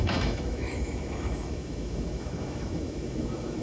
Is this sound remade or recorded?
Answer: remade